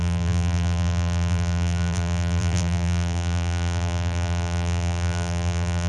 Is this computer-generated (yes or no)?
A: yes